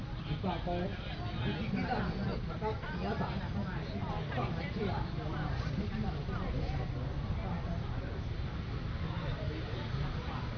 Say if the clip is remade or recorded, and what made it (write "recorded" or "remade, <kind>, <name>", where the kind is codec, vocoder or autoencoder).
recorded